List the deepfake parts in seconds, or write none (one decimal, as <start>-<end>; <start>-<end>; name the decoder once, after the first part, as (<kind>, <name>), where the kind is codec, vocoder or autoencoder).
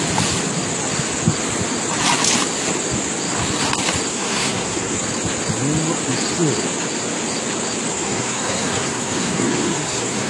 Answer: 4.1-5.0 (codec, SNAC); 7.9-10.3